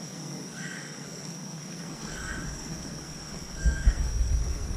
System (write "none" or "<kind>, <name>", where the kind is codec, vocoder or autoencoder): codec, SNAC